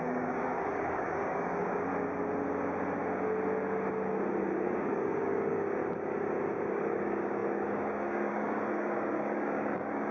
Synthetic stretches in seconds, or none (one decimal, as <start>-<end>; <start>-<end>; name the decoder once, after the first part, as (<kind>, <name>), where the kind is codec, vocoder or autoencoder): 0.0-1.9 (codec, DAC); 4.4-5.8; 6.7-10.1